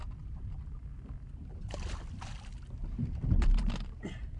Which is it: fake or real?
real